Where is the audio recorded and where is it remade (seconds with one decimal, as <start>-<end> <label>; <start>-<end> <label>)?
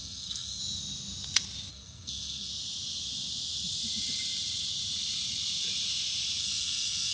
0.0-0.6 remade; 0.6-1.7 recorded; 1.7-2.5 remade; 2.5-6.4 recorded; 6.4-7.1 remade